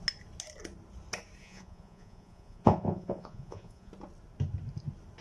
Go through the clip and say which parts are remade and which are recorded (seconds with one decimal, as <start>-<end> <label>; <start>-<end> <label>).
0.0-1.4 recorded; 1.4-3.9 remade; 3.9-5.2 recorded